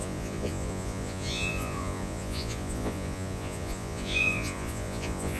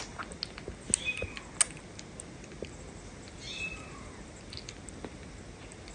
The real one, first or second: second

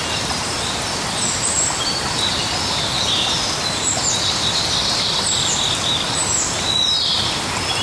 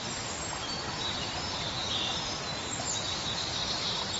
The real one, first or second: second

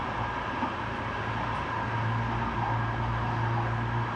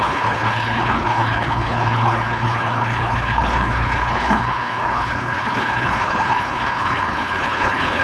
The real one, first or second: first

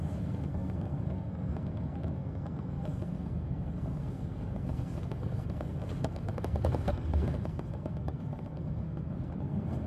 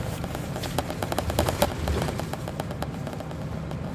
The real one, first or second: second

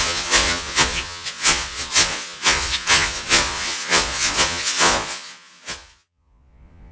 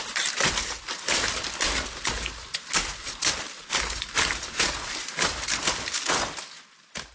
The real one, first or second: second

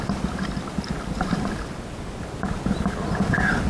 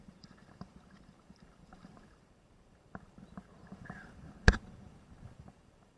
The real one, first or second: first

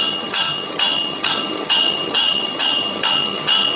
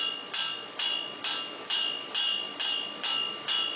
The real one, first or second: second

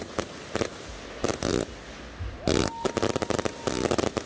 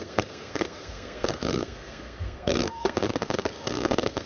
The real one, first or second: first